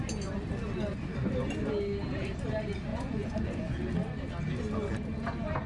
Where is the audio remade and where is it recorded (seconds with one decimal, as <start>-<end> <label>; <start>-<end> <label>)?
0.0-2.9 recorded; 2.9-3.9 remade; 3.9-5.7 recorded